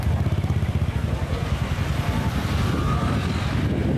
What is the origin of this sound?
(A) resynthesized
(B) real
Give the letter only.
B